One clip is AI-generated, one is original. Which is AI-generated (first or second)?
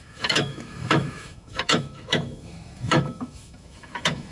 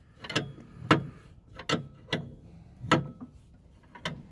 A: first